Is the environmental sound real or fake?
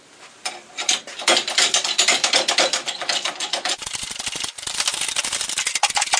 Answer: real